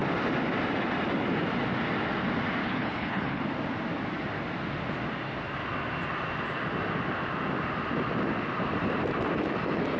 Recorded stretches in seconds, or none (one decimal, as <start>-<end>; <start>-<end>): 0.0-2.6; 3.4-10.0

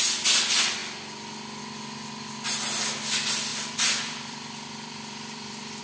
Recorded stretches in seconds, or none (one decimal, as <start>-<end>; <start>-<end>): 0.0-3.5

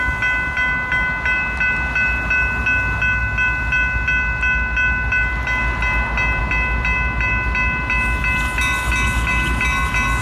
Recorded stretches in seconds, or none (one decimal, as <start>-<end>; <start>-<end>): 0.0-10.2

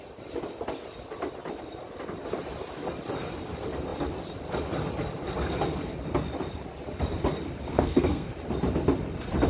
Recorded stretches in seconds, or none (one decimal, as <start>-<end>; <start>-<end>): 0.0-7.7; 8.3-9.5

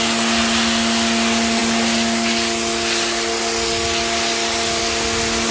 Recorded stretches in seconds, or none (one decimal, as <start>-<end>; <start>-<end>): 0.0-5.5

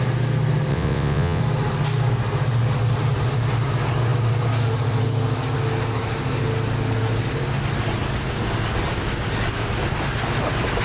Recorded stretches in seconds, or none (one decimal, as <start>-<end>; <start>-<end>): 0.0-0.7; 1.4-10.8

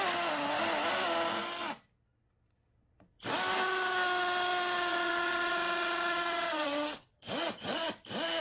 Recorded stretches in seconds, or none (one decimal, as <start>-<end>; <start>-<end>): 0.0-4.9; 7.8-8.4

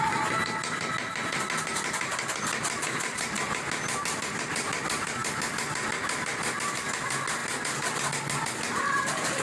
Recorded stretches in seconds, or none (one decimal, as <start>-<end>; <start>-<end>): 0.0-5.2; 6.9-7.4; 8.1-9.4